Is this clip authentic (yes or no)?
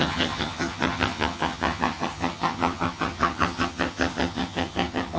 no